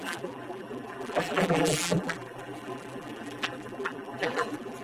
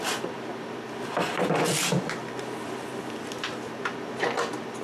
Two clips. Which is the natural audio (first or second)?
second